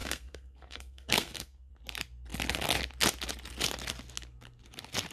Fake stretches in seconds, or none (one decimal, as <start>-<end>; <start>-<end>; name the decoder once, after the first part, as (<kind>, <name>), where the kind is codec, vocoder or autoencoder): 0.0-1.7 (codec, SNAC)